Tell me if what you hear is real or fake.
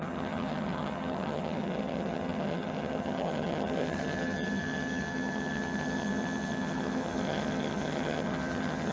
fake